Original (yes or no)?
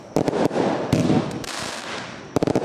yes